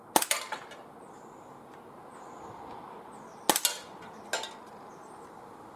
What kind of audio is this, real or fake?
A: real